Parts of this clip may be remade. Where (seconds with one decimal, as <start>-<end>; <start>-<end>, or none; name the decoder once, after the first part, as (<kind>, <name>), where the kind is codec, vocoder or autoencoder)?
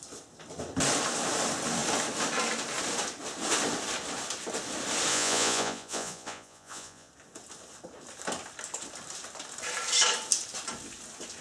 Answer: 5.1-7.1 (vocoder, Vocos)